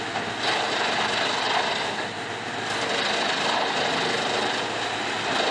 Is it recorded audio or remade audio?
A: recorded